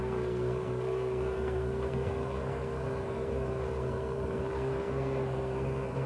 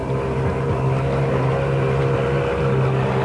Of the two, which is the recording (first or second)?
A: second